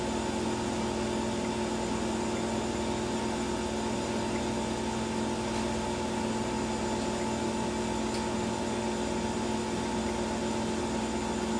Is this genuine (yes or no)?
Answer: yes